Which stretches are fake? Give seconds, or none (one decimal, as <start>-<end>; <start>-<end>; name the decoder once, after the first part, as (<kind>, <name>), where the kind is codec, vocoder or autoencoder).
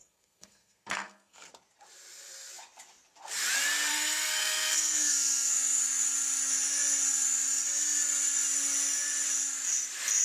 0.0-1.5 (codec, SNAC); 3.9-5.8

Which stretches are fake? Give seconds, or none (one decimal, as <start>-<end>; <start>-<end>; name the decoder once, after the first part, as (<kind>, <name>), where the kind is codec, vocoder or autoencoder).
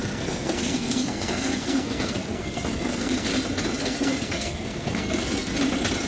0.0-3.3 (codec, SNAC); 3.8-5.5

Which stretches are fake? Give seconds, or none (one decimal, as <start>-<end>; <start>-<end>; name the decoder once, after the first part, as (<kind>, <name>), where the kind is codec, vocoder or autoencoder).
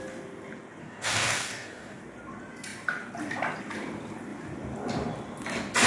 0.8-2.0 (codec, DAC)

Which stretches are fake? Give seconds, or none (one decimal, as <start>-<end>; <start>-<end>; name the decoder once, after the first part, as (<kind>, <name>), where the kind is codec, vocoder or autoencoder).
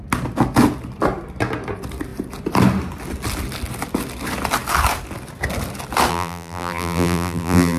6.1-7.8 (vocoder, BigVGAN v2)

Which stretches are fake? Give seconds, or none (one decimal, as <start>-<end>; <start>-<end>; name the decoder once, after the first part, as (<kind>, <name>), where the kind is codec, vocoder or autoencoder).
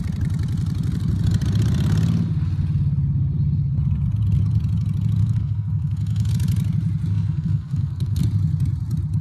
5.2-6.3 (codec, SNAC); 7.1-8.2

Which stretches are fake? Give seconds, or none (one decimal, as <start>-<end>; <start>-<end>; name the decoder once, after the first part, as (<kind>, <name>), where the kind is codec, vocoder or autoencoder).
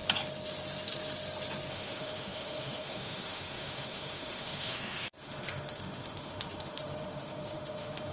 1.7-8.1 (autoencoder, DAC-VAE)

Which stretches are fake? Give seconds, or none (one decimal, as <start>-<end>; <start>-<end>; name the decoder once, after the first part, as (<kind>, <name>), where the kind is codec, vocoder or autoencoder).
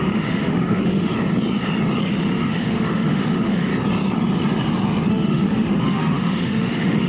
0.0-1.1 (autoencoder, DAC-VAE); 2.2-3.7; 5.1-7.1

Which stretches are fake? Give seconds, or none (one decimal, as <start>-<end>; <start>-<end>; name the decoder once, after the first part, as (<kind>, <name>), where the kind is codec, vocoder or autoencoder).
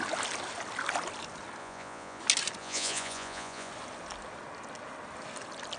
1.6-2.2 (vocoder, Vocos); 2.6-3.7